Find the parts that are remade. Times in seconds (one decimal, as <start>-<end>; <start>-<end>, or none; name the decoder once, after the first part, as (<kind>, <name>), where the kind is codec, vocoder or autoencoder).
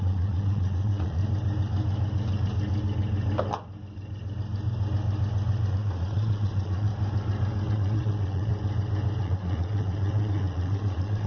0.0-1.2 (vocoder, Vocos); 5.7-6.9; 7.7-8.5; 9.2-11.3